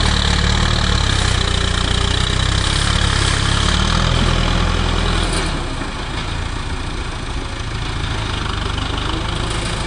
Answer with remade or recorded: recorded